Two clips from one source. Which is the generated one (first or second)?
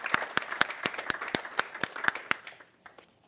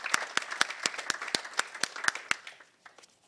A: first